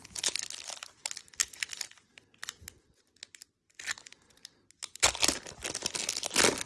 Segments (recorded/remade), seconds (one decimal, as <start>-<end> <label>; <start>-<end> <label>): 0.0-6.7 recorded